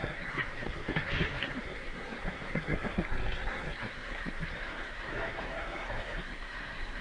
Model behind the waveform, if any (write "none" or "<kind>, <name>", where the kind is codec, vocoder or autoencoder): codec, SNAC